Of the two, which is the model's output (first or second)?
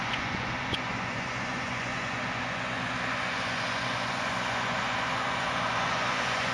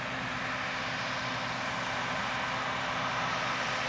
first